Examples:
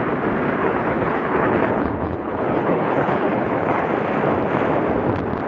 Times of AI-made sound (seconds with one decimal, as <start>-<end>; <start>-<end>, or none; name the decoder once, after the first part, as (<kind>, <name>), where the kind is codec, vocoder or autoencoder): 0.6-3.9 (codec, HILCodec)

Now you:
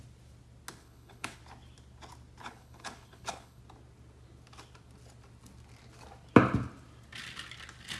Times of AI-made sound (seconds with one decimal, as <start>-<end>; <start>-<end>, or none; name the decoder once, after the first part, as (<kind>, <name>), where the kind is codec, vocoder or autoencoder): 0.7-1.4 (codec, HILCodec); 2.4-3.6

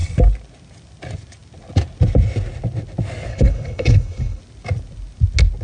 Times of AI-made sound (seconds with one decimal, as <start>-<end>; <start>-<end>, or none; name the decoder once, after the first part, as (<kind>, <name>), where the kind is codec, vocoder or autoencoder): 3.3-4.4 (codec, HILCodec)

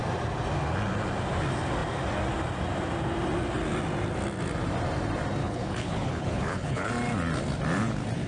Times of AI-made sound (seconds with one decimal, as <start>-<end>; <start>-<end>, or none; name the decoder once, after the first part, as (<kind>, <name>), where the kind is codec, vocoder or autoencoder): 5.4-6.9 (codec, HILCodec)